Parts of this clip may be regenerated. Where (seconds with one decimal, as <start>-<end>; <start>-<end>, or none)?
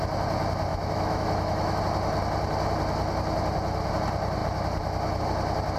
0.7-1.8